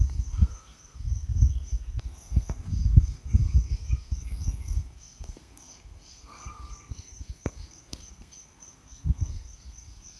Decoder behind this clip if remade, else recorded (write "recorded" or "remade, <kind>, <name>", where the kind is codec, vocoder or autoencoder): remade, codec, SNAC